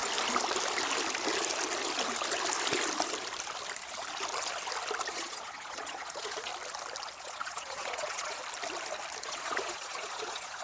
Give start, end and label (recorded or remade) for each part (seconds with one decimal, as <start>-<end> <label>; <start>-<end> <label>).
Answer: 0.0-5.1 recorded; 5.1-6.5 remade; 6.5-7.2 recorded; 7.2-8.4 remade; 8.4-9.2 recorded; 9.2-10.6 remade